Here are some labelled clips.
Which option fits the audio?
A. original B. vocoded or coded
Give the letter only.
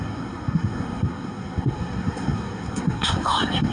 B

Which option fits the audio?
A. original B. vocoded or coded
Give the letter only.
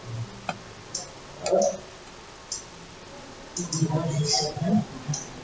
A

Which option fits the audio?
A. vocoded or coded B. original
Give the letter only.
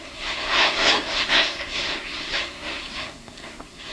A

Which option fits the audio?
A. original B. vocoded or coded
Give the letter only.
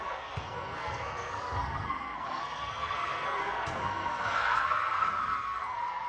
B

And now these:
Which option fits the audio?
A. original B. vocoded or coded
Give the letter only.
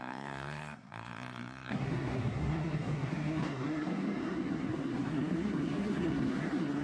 B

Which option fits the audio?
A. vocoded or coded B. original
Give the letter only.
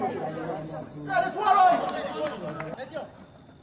B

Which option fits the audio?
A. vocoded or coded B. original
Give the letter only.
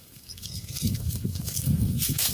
A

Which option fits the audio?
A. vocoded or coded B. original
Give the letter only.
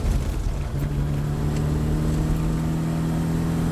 B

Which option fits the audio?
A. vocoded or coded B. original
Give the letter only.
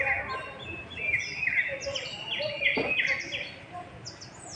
B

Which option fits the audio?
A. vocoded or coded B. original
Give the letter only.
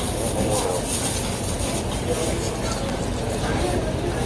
B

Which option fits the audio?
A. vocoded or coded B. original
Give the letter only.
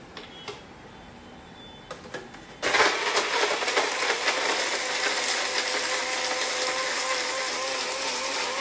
B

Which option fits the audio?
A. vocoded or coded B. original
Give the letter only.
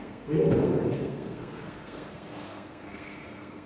A